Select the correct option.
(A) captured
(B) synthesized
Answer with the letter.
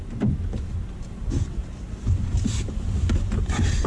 A